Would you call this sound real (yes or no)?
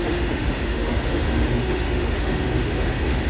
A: no